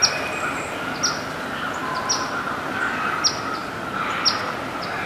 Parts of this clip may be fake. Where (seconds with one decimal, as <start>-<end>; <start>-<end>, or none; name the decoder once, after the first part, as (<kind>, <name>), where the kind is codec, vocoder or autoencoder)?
none